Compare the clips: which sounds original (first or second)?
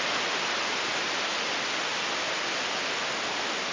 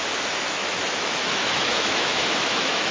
first